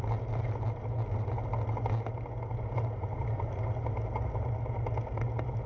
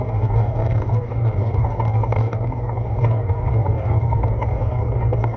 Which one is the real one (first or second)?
first